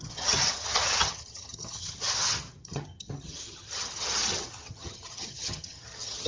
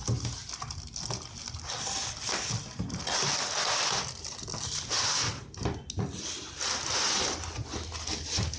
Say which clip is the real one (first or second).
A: second